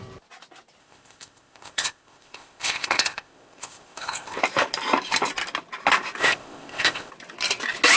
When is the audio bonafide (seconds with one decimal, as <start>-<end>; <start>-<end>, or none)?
0.0-0.8; 4.4-6.2; 7.1-8.0